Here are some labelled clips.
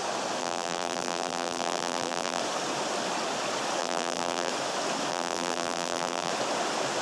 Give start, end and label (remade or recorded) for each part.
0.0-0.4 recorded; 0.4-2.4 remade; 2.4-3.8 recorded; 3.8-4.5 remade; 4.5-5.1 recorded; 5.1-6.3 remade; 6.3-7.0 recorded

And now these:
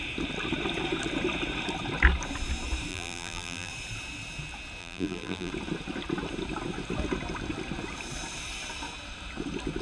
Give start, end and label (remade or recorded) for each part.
0.0-2.9 recorded; 2.9-3.7 remade; 3.7-4.8 recorded; 4.8-5.5 remade; 5.5-9.8 recorded

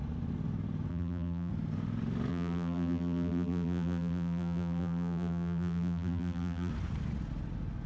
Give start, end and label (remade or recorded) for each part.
0.0-0.9 recorded; 0.9-1.5 remade; 1.5-2.3 recorded; 2.3-6.7 remade; 6.7-7.9 recorded

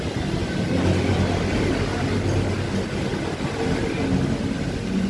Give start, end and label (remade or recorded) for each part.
0.0-5.1 recorded